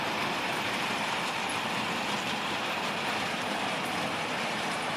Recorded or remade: recorded